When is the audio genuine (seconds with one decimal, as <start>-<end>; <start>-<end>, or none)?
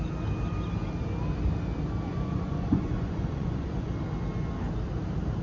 0.0-2.1; 3.9-5.4